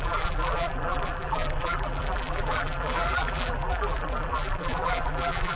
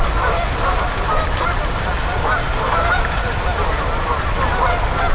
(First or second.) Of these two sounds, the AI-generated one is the first